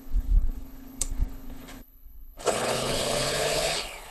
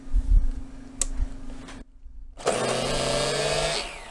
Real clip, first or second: second